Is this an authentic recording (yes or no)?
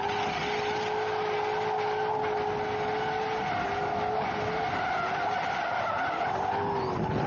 yes